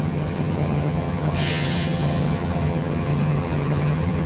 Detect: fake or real fake